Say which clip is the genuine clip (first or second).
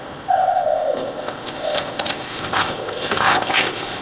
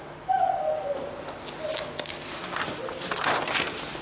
second